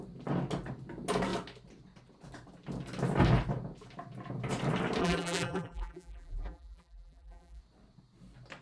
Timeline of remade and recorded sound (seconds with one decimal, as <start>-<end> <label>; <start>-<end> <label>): 0.0-5.0 recorded; 5.0-7.6 remade; 7.6-8.6 recorded